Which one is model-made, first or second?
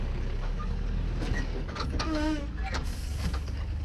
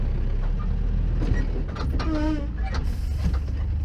first